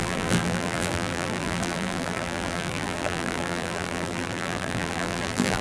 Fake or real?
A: fake